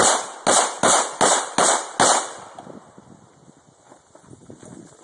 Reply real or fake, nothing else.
real